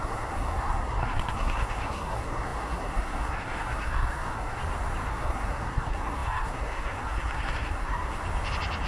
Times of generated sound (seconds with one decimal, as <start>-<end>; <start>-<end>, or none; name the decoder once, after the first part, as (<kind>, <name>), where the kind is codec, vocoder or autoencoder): 0.0-4.6 (codec, SNAC); 5.1-8.2